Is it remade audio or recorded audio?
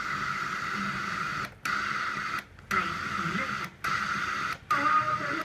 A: recorded